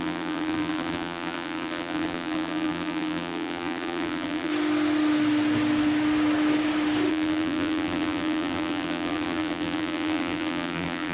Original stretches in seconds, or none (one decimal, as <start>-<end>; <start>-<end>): 4.5-7.1